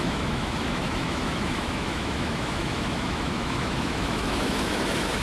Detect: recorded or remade remade